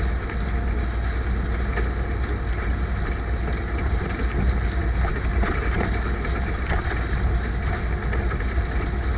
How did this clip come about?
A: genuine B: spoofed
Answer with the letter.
A